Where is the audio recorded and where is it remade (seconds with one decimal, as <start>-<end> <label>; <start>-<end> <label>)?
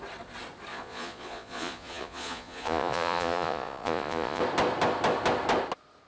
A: 0.0-0.7 recorded; 0.7-4.4 remade; 4.4-6.1 recorded